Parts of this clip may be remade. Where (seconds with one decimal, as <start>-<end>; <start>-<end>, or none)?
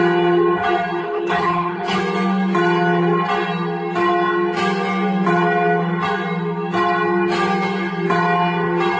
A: 1.0-2.0